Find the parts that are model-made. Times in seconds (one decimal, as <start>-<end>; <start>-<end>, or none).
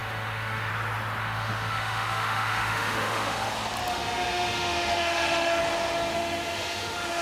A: 0.0-0.7; 1.2-3.5; 3.9-5.6; 6.1-7.2